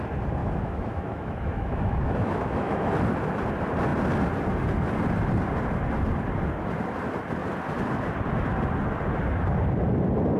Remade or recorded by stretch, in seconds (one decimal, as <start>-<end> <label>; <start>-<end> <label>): 0.0-0.4 recorded; 0.4-2.9 remade; 2.9-10.4 recorded